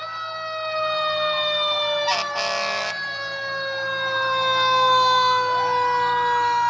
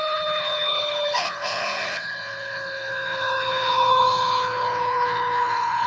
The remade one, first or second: second